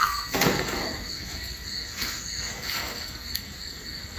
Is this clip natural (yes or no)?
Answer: no